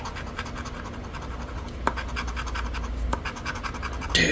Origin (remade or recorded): recorded